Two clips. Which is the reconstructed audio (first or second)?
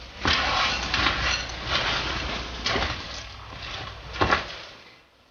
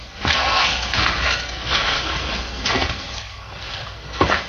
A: second